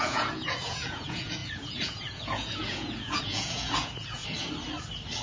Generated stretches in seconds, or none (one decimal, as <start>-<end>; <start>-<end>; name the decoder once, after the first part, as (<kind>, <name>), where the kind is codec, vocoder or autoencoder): 0.0-4.2 (vocoder, Vocos)

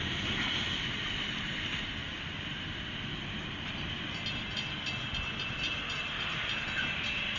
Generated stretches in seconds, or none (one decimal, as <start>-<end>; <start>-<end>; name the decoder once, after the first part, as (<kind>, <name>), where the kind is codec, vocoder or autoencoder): none

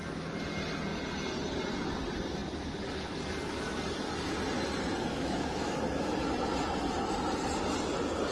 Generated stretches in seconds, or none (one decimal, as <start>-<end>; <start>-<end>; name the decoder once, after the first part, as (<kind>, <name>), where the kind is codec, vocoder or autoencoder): 5.1-6.2 (autoencoder, DAC-VAE)

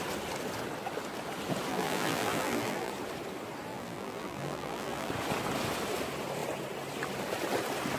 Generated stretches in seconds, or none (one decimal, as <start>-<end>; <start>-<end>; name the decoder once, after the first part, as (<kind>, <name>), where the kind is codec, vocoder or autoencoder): 1.7-2.9 (vocoder, BigVGAN v2); 3.7-5.1

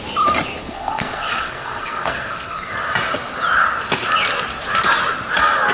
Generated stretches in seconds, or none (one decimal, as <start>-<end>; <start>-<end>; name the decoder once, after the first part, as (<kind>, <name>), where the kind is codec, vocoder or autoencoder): 0.6-2.7 (codec, SNAC)